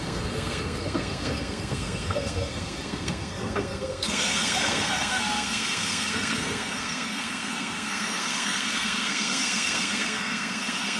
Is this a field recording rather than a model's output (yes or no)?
no